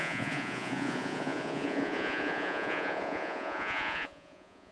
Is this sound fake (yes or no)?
yes